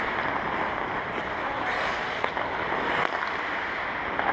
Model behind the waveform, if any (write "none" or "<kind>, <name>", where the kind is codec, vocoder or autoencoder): none